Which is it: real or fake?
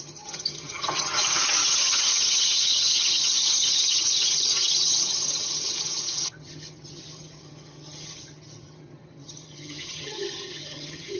fake